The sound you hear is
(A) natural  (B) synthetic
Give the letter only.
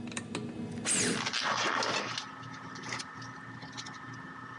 A